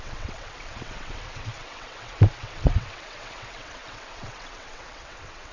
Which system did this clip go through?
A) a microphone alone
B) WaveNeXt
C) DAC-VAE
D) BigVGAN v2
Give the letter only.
B